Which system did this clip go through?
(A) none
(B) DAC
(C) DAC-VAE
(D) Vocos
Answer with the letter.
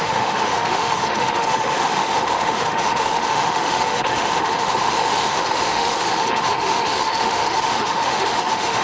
C